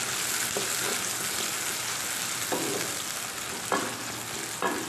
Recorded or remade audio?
recorded